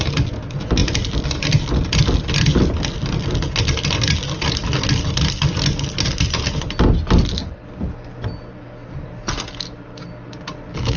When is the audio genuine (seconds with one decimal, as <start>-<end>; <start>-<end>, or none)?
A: 0.0-4.6; 6.1-11.0